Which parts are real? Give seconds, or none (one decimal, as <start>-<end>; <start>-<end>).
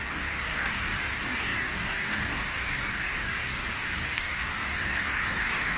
none